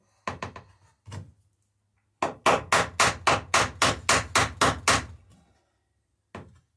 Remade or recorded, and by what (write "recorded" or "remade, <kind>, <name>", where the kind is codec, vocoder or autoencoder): recorded